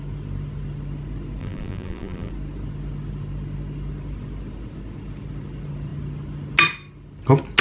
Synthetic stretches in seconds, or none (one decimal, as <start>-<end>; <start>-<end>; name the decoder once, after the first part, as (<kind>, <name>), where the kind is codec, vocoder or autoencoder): 1.4-2.3 (vocoder, BigVGAN v2)